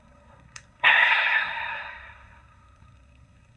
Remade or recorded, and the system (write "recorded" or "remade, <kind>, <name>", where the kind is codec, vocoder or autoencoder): remade, codec, SNAC